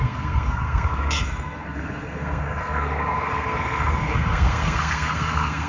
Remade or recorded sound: remade